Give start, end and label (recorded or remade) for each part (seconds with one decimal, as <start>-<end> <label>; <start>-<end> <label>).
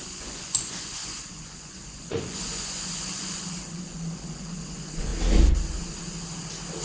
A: 0.0-5.1 remade; 5.1-6.8 recorded